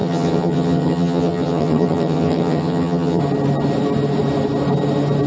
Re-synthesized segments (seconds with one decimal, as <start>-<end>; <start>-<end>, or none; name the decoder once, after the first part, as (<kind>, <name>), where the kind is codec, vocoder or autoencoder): 0.0-3.2 (vocoder, HiFi-GAN)